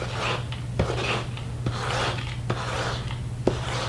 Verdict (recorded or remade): recorded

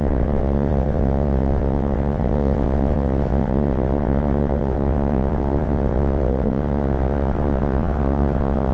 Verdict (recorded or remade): remade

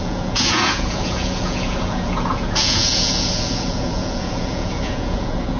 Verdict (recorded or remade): remade